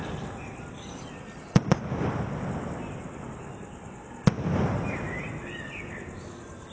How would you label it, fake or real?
real